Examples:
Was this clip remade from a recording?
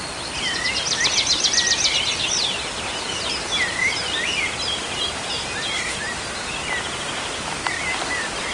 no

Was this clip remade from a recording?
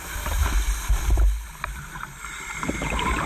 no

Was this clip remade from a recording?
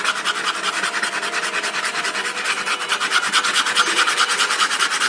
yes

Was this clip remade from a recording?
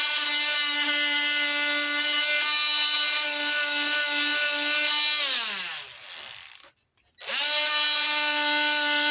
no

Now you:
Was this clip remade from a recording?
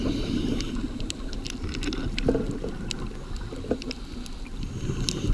no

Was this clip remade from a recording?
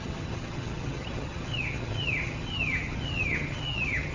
yes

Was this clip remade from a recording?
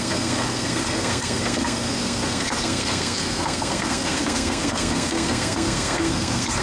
yes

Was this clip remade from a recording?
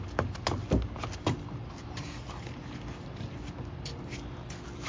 no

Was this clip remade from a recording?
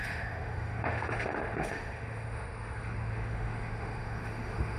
yes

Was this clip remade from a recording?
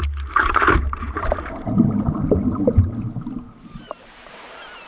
yes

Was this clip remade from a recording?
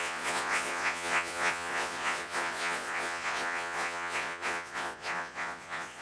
yes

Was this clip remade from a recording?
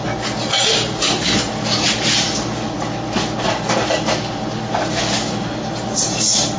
no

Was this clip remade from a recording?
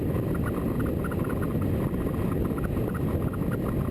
no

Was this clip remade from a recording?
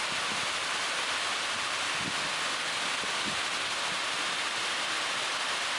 no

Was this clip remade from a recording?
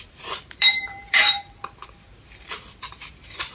yes